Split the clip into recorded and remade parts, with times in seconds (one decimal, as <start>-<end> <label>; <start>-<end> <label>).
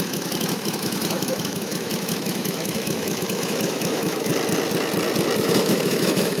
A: 0.0-4.3 remade; 4.3-5.4 recorded; 5.4-6.4 remade